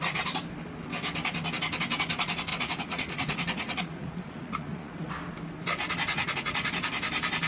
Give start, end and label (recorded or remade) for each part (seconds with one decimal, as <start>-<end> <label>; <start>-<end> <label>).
0.0-2.5 recorded; 2.5-5.1 remade; 5.1-6.1 recorded; 6.1-6.7 remade; 6.7-7.5 recorded